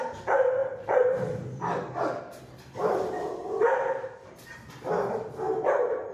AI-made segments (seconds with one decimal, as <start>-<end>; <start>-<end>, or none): 0.6-4.3